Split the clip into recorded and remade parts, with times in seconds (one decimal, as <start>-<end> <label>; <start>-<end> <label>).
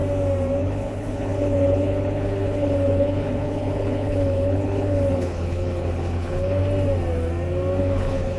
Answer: 0.0-0.6 recorded; 0.6-6.6 remade; 6.6-7.8 recorded; 7.8-8.4 remade